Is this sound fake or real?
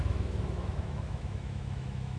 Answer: fake